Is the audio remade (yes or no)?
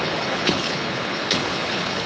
yes